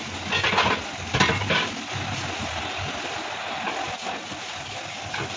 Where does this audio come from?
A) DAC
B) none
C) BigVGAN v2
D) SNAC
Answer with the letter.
B